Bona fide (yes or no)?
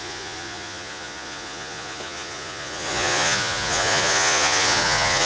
no